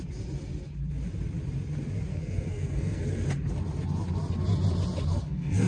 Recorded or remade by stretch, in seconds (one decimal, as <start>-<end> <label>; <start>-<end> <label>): 0.0-2.1 recorded; 2.1-3.0 remade; 3.0-5.1 recorded; 5.1-5.7 remade